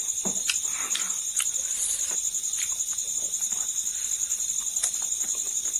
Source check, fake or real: real